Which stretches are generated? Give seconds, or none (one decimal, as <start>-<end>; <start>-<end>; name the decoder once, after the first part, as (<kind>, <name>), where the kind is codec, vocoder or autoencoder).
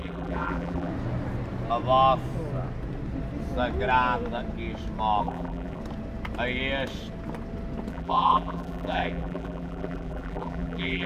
0.0-0.9 (vocoder, BigVGAN v2); 5.2-5.8; 7.9-11.1